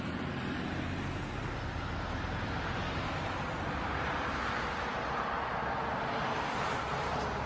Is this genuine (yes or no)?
yes